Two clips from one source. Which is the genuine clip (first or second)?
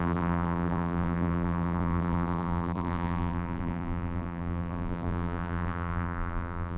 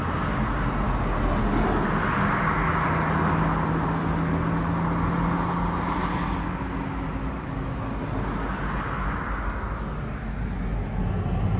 second